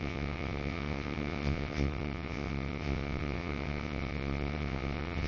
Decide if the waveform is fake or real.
fake